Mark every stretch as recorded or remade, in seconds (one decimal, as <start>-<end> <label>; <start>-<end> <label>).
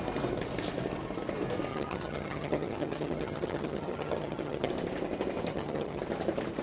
0.0-1.7 recorded; 1.7-4.7 remade; 4.7-5.5 recorded; 5.5-6.0 remade; 6.0-6.6 recorded